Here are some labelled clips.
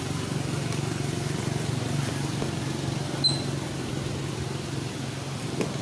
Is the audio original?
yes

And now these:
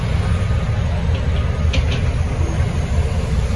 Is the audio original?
yes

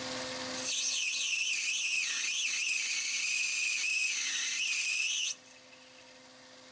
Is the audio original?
yes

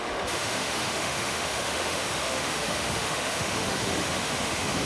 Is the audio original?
no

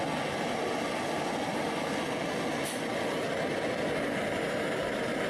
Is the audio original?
yes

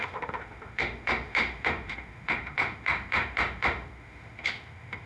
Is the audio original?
no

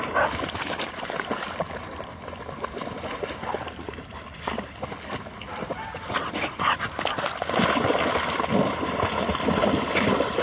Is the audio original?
yes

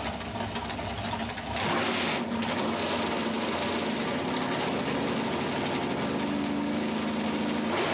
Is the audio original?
yes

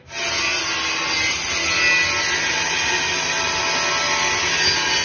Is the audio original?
yes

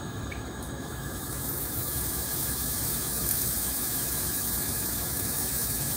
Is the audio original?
no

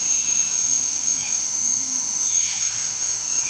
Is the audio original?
no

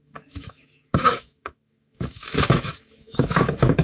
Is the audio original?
no